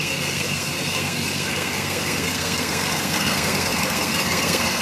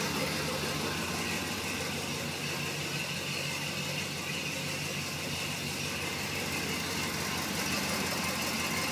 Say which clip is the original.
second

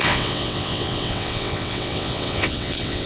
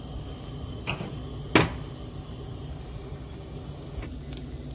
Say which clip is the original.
second